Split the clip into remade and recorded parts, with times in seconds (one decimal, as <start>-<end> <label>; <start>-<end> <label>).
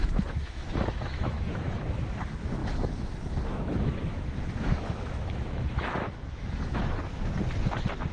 0.0-6.8 remade; 6.8-8.1 recorded